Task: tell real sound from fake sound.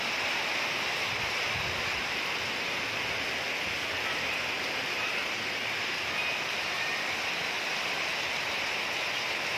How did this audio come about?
real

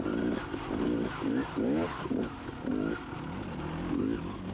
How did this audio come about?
real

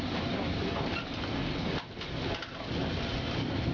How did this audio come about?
real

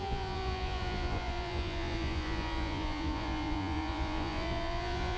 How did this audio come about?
fake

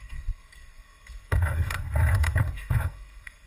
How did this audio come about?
fake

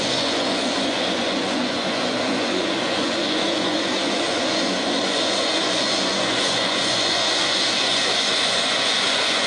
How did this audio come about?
fake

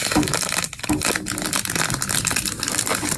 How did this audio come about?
real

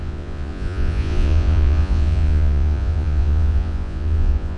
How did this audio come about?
fake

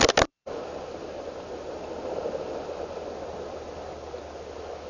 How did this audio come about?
real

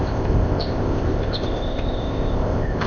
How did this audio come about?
fake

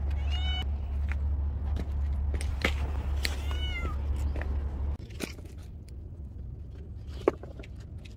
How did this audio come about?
real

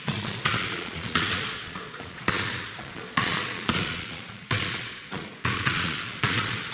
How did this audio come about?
fake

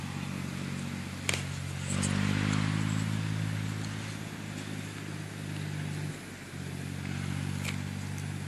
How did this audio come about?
real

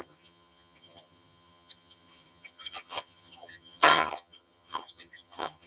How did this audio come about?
fake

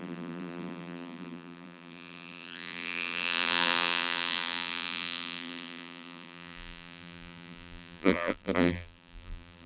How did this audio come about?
fake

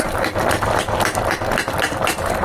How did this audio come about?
fake